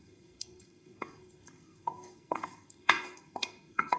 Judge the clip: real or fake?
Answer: fake